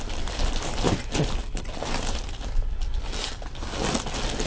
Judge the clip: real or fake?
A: real